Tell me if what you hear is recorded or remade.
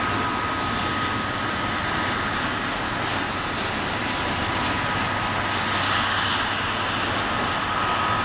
recorded